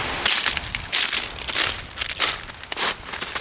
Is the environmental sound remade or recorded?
recorded